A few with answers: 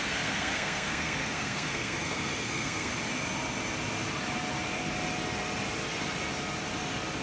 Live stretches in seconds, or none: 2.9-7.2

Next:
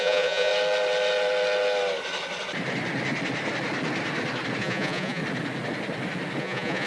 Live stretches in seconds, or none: 0.5-4.6; 5.2-6.4

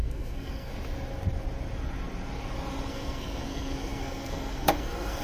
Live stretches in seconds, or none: 0.7-2.9

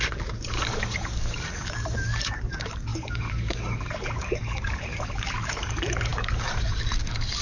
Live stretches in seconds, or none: none

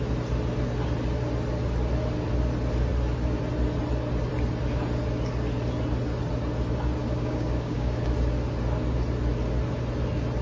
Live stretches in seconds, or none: 0.0-7.0; 8.0-10.4

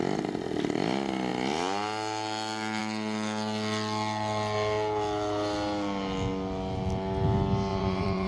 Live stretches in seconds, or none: 0.0-7.7

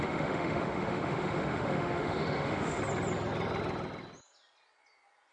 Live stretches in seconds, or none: 2.8-5.3

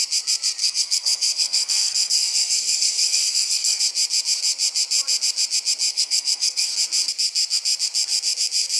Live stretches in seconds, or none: 0.0-0.6; 3.8-5.9; 6.7-8.8